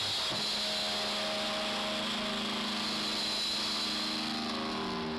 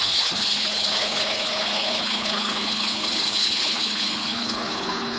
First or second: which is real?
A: first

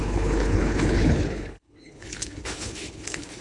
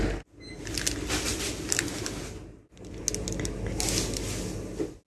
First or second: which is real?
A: second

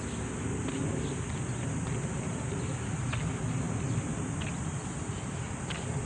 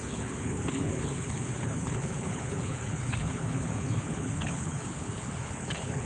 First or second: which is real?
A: first